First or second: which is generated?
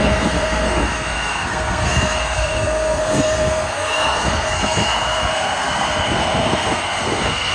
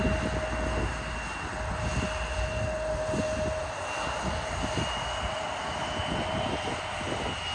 first